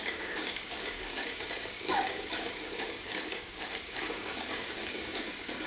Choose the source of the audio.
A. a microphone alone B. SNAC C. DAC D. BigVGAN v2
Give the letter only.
C